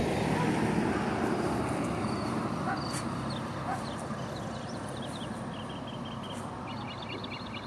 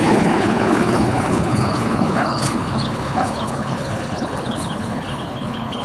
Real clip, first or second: first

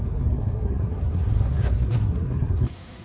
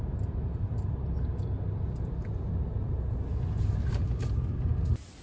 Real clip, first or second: second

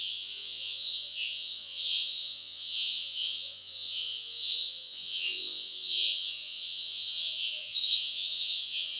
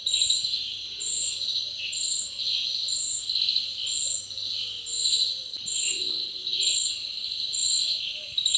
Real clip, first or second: second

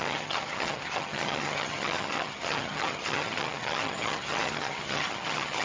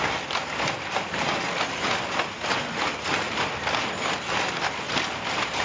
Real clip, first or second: second